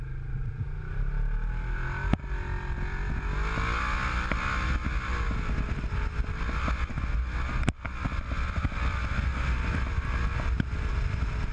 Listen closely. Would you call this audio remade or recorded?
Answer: recorded